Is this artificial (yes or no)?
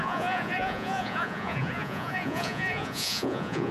yes